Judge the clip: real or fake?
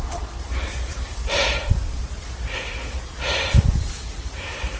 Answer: real